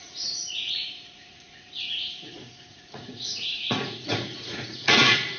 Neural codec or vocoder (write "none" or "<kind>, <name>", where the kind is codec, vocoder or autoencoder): vocoder, Vocos